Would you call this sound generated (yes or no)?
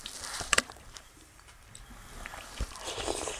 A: yes